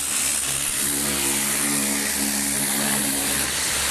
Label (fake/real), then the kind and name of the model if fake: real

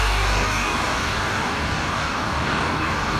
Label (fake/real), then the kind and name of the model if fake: fake, codec, DAC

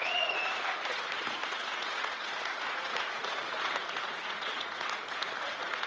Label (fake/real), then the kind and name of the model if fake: fake, vocoder, Vocos